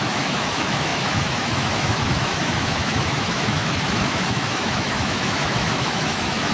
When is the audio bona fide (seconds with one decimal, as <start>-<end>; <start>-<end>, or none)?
none